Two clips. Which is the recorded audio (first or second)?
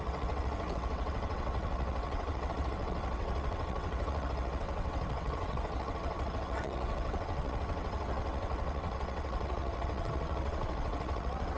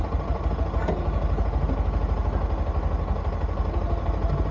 second